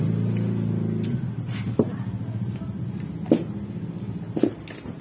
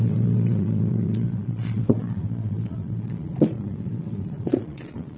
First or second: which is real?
first